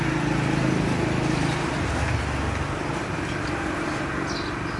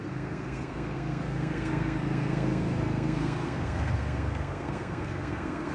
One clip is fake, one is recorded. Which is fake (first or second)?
second